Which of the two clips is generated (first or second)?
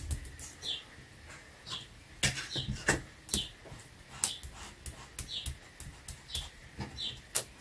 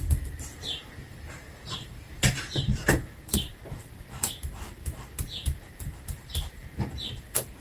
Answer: second